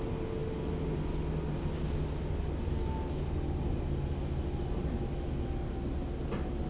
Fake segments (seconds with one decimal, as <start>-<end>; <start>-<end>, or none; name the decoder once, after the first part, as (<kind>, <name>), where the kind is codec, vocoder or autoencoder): none